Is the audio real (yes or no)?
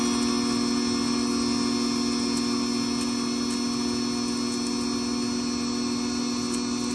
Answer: yes